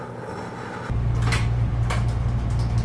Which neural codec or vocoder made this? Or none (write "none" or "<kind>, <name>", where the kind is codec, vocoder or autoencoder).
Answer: none